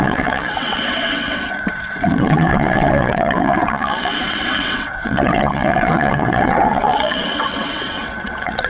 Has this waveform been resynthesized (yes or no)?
yes